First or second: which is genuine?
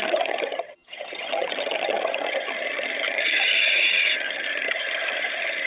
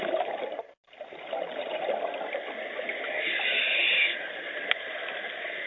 second